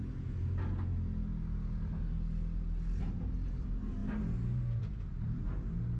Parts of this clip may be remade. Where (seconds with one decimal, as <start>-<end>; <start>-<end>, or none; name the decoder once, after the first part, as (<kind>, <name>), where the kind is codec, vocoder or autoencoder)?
none